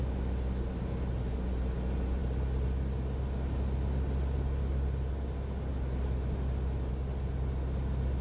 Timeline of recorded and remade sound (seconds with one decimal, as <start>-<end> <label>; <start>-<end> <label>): 0.0-8.2 recorded

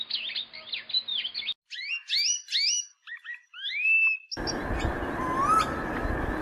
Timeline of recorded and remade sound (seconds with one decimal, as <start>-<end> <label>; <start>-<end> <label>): 0.0-6.4 recorded

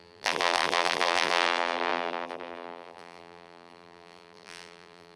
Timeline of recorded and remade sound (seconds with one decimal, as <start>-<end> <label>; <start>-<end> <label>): 0.0-5.2 remade

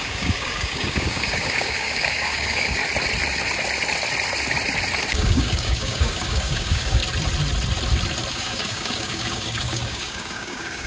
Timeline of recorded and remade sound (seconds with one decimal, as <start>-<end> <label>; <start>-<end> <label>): 0.0-2.8 remade; 2.8-5.1 recorded; 5.1-7.0 remade; 7.0-8.3 recorded; 8.3-10.9 remade

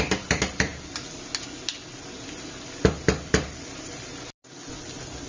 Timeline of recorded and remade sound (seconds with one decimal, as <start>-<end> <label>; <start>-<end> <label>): 0.0-5.3 recorded